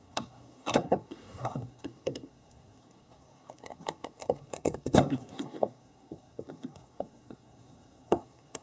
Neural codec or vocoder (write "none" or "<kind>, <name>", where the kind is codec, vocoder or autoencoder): codec, SNAC